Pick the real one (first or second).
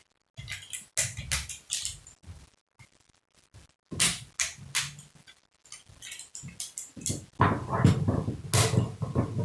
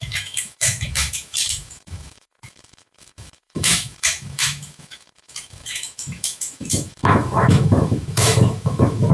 first